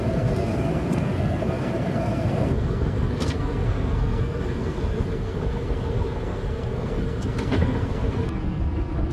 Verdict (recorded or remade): remade